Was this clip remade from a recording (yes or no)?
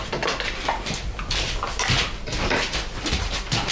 no